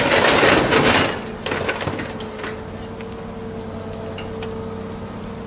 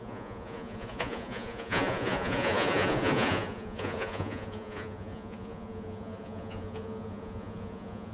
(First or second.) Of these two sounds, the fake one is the second